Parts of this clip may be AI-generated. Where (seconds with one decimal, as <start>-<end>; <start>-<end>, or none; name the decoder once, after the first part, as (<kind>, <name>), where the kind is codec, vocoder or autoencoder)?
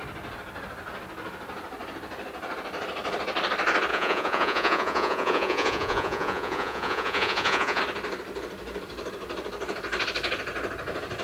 3.9-7.8 (vocoder, Vocos)